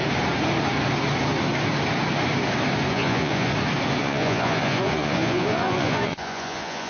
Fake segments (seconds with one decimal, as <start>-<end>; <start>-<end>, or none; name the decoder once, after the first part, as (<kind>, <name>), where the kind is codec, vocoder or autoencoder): 2.9-3.5 (vocoder, Vocos); 4.0-6.9